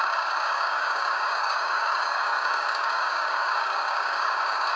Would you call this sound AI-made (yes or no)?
yes